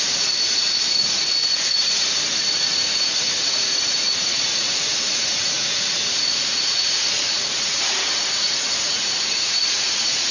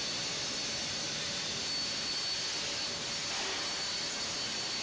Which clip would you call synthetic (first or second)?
first